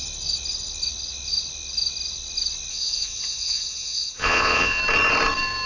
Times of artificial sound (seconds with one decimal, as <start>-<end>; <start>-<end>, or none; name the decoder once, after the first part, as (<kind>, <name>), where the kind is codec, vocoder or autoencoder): 2.7-4.8 (vocoder, Vocos)